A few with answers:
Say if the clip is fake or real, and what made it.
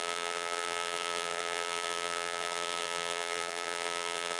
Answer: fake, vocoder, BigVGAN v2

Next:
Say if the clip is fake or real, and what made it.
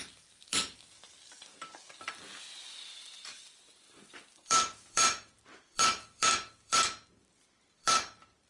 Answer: fake, vocoder, BigVGAN v2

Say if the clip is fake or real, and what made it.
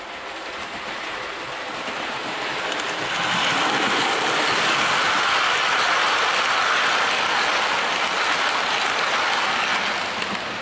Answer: real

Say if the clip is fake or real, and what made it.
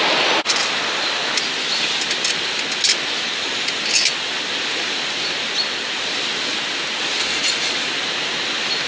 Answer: real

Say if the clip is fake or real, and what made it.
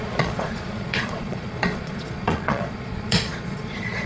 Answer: fake, vocoder, Vocos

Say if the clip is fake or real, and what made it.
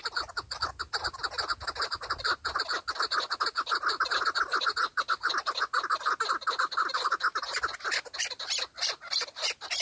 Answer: real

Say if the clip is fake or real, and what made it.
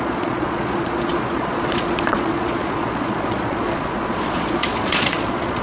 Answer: fake, vocoder, Vocos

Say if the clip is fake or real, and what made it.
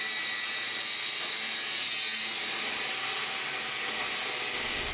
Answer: real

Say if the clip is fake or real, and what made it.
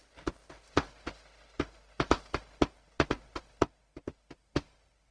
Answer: real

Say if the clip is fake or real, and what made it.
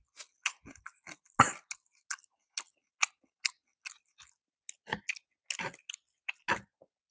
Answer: real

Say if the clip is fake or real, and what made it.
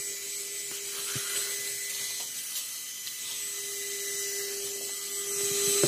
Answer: real